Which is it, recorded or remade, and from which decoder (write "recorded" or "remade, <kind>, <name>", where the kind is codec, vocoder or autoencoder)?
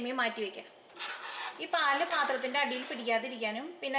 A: recorded